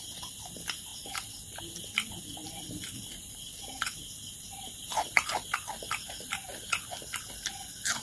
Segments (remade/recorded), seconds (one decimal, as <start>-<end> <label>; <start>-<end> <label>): 0.0-0.9 recorded; 0.9-1.6 remade; 1.6-2.4 recorded; 2.4-7.2 remade; 7.2-8.0 recorded